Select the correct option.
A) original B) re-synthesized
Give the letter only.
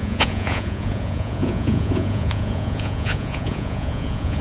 B